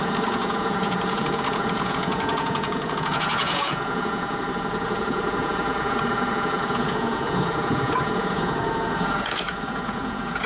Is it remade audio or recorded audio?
remade